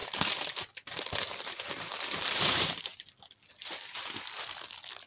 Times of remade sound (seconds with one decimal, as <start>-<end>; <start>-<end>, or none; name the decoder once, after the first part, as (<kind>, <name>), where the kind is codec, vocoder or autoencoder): 0.0-3.1 (vocoder, BigVGAN v2); 3.9-4.6